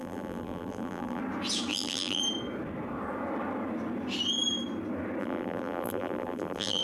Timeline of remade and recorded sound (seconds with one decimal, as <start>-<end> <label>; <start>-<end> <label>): 0.0-1.2 remade; 1.2-1.7 recorded; 1.7-2.2 remade; 2.2-5.2 recorded; 5.2-6.8 remade